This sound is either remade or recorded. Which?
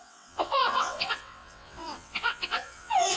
remade